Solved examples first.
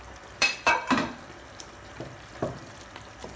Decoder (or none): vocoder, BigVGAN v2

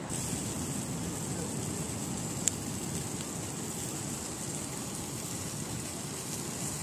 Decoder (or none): none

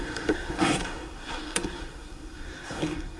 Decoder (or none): codec, SNAC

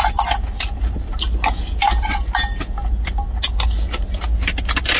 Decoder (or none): none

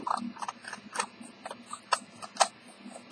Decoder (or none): none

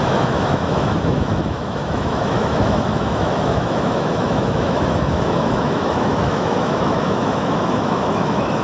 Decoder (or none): autoencoder, DAC-VAE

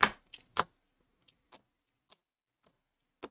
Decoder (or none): none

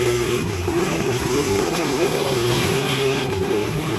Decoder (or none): codec, SNAC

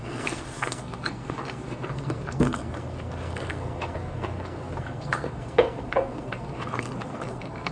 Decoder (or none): codec, SNAC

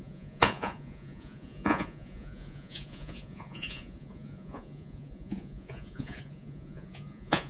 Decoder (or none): vocoder, Vocos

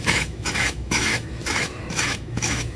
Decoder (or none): autoencoder, DAC-VAE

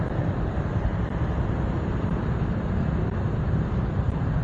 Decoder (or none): none